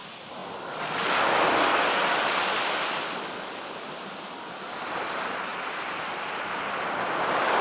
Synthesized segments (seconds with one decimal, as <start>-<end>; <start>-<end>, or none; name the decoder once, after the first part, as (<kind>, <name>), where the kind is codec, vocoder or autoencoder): none